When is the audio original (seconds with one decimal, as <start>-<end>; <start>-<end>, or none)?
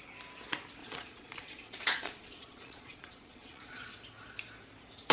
0.0-0.8; 3.9-5.1